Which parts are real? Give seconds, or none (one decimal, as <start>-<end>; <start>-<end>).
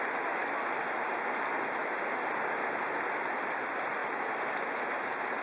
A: 0.0-5.4